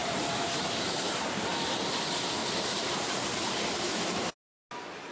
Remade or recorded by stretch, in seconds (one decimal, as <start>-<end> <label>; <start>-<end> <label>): 0.0-1.5 remade; 1.5-2.4 recorded; 2.4-4.3 remade; 4.3-5.1 recorded